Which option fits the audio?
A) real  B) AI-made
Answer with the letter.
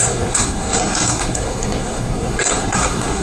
B